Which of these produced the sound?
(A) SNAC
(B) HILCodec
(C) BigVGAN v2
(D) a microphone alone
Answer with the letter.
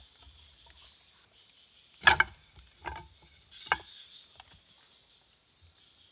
D